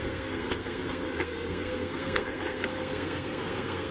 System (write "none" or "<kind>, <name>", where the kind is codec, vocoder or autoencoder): codec, SNAC